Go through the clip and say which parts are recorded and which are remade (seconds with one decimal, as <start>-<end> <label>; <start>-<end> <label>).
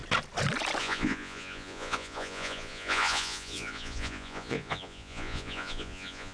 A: 0.0-0.8 recorded; 0.8-6.3 remade